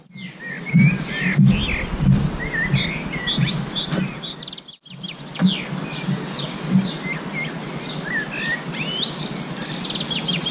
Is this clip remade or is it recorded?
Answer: recorded